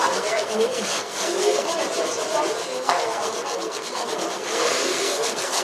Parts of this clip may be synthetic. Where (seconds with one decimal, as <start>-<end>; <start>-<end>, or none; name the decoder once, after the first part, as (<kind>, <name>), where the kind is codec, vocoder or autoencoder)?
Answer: 0.0-1.7 (codec, SNAC); 2.8-5.6